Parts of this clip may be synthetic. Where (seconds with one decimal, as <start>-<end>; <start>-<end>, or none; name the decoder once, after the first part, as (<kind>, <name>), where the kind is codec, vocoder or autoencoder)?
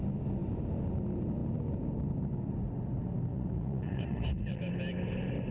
3.3-4.6 (vocoder, Vocos)